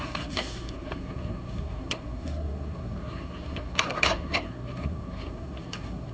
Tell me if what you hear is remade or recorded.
remade